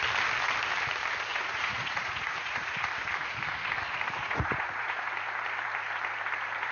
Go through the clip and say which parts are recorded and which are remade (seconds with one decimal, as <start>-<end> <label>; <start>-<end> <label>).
0.0-1.3 recorded; 1.3-2.7 remade; 2.7-4.2 recorded; 4.2-5.1 remade; 5.1-6.7 recorded